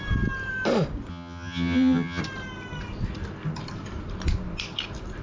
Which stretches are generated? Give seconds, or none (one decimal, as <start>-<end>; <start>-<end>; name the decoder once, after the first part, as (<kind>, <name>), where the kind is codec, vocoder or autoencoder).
1.1-2.2 (vocoder, HiFi-GAN)